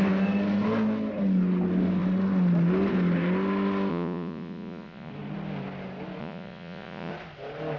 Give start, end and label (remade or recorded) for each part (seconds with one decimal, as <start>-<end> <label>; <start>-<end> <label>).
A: 0.0-3.9 recorded; 3.9-5.1 remade; 5.1-6.2 recorded; 6.2-7.1 remade; 7.1-7.8 recorded